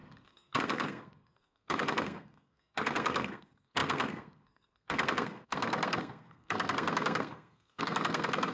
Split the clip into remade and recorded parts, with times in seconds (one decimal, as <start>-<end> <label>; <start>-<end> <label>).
0.0-8.5 remade